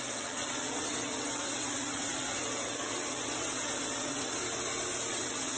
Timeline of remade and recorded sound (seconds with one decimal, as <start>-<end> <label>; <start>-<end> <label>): 0.0-4.4 remade; 4.4-5.1 recorded; 5.1-5.6 remade